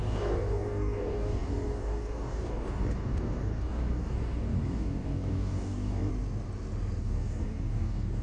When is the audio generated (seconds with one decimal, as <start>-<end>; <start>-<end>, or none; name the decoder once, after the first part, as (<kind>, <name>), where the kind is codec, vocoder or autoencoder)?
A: 0.0-6.1 (codec, DAC); 7.0-8.2